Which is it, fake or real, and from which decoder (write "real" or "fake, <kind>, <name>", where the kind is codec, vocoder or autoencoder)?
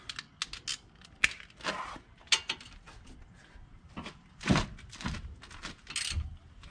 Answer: real